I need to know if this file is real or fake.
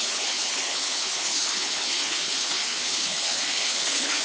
fake